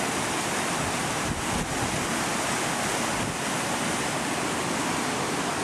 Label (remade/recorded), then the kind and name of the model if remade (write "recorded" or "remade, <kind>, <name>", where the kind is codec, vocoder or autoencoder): recorded